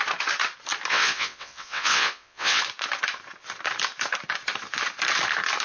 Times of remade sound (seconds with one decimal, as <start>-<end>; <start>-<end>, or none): 0.9-2.6